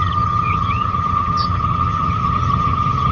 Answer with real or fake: fake